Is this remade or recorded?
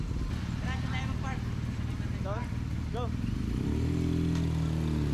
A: recorded